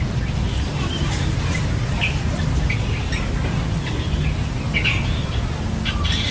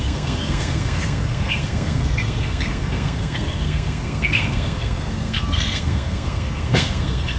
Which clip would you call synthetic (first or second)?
second